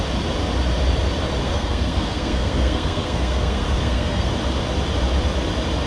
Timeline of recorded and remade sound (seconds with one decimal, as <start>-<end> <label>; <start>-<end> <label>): 0.0-1.4 recorded; 1.4-4.3 remade; 4.3-5.9 recorded